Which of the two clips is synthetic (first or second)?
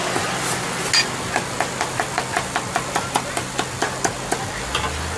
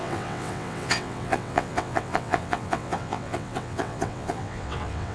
second